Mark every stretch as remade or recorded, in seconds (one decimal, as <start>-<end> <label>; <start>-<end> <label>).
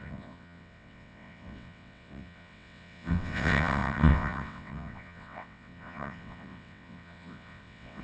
0.0-8.0 remade